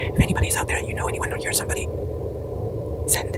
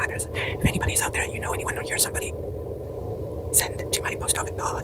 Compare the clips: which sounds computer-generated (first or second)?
first